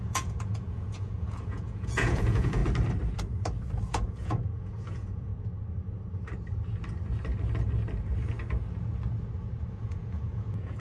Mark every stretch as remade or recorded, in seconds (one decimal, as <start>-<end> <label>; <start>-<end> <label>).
0.0-2.6 remade; 2.6-3.9 recorded; 3.9-5.3 remade; 5.3-9.7 recorded; 9.7-10.8 remade